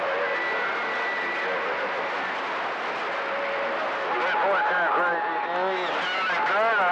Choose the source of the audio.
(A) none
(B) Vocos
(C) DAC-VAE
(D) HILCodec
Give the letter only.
A